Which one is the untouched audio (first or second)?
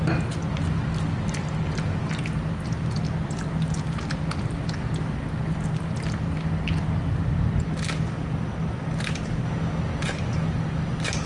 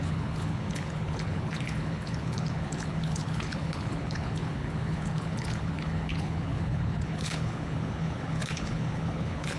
first